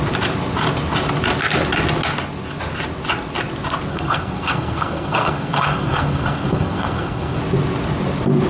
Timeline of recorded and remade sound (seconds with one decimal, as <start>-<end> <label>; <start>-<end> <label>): 0.0-3.9 recorded; 3.9-7.4 remade; 7.4-8.5 recorded